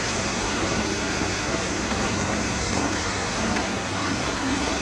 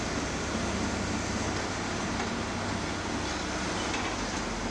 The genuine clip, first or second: second